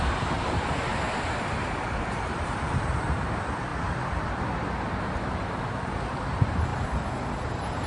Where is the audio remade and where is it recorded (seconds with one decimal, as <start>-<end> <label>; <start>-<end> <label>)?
0.0-0.9 remade; 0.9-1.4 recorded; 1.4-3.7 remade; 3.7-4.2 recorded; 4.2-7.9 remade